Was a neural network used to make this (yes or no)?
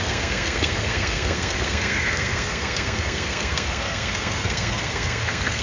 yes